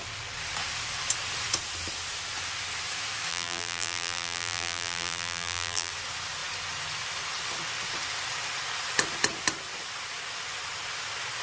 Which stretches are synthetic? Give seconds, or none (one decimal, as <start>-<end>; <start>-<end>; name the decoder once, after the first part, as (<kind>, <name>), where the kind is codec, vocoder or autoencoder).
3.3-5.9 (vocoder, BigVGAN v2)